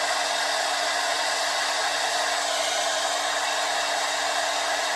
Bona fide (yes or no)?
yes